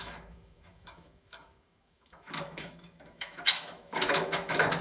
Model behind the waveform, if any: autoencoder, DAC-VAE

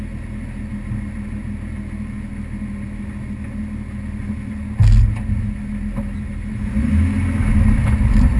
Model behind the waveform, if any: none